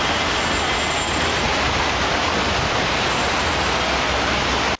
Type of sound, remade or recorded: recorded